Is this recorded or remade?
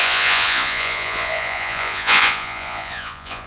remade